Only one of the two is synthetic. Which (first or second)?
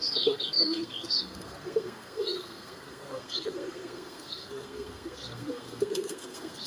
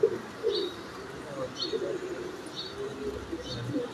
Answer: first